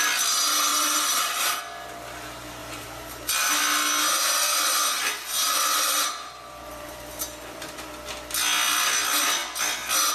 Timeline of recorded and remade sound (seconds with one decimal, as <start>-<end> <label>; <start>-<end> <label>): 0.0-0.7 recorded; 0.7-1.6 remade; 1.6-2.6 recorded; 2.6-3.5 remade; 3.5-4.9 recorded; 4.9-7.1 remade; 7.1-10.1 recorded